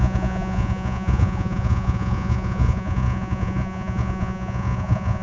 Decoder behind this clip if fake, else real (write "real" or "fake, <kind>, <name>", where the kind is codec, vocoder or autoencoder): fake, vocoder, Vocos